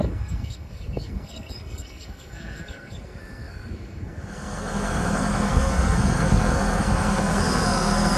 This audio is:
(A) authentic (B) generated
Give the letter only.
B